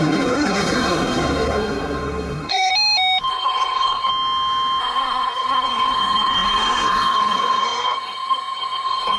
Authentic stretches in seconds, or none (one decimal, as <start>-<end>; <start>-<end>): 2.7-3.3; 4.1-4.8